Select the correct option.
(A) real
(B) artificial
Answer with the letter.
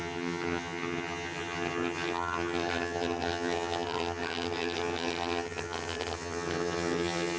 B